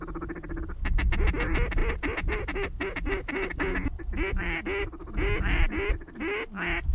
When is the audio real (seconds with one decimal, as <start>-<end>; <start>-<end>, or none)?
0.0-6.9

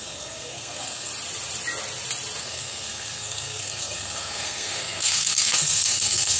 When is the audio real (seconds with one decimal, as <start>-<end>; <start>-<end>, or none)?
1.1-2.4